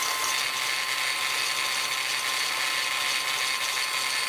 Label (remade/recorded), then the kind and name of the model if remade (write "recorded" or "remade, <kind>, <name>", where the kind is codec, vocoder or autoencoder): recorded